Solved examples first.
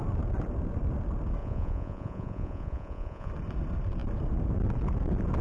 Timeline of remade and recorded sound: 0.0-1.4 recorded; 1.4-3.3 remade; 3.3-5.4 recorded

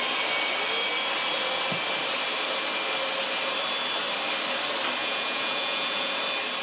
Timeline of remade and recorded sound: 0.0-5.0 recorded; 5.0-6.1 remade; 6.1-6.6 recorded

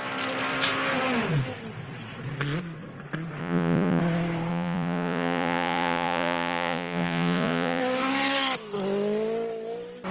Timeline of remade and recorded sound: 0.0-3.4 recorded; 3.4-4.0 remade; 4.0-4.5 recorded; 4.5-7.8 remade; 7.8-10.1 recorded

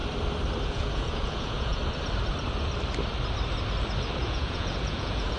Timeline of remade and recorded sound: 0.0-0.6 recorded; 0.6-1.8 remade; 1.8-4.2 recorded; 4.2-5.4 remade

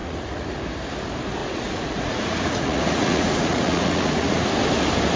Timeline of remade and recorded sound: 0.0-0.6 remade; 0.6-1.4 recorded; 1.4-4.5 remade; 4.5-5.2 recorded

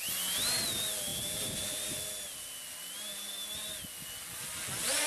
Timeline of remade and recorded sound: 0.0-5.1 recorded